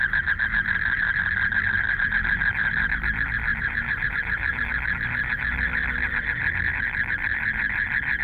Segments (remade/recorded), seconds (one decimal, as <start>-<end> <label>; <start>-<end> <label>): 0.0-3.5 recorded; 3.5-4.6 remade; 4.6-8.2 recorded